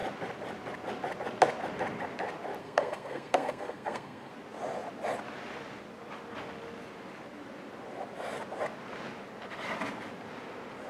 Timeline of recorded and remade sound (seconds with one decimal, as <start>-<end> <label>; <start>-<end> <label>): 0.0-2.6 recorded; 2.6-4.3 remade; 4.3-10.9 recorded